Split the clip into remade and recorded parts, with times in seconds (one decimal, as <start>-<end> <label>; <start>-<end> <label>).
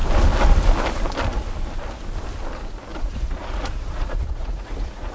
0.0-2.9 recorded; 2.9-5.1 remade